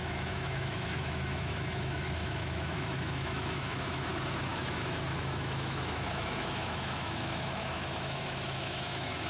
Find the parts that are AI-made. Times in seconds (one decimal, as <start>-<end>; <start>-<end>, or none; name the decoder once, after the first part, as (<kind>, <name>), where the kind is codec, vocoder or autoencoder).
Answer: 0.0-9.3 (autoencoder, DAC-VAE)

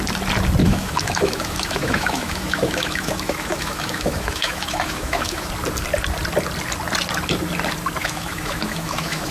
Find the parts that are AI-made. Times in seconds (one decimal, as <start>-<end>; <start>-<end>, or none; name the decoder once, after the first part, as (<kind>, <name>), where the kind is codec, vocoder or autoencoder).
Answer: 0.6-5.5 (autoencoder, DAC-VAE); 8.0-9.3